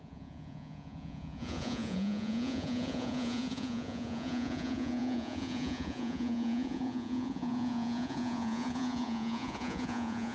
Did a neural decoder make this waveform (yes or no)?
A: yes